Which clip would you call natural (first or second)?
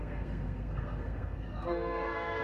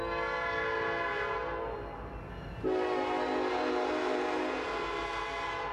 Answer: second